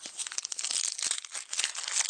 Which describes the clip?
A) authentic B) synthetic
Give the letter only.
A